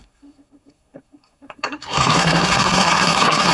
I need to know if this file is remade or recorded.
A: remade